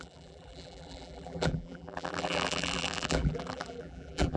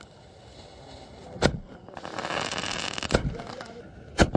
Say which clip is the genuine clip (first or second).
second